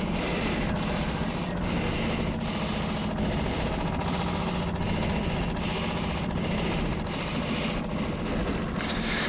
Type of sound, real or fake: real